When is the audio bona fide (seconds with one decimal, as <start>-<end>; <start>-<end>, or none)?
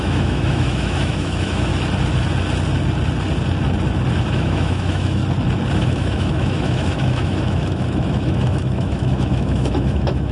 1.7-4.3; 5.2-5.7